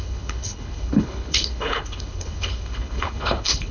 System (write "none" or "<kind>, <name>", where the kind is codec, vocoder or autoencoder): codec, HILCodec